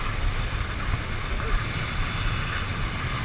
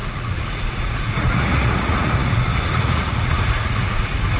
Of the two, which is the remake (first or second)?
second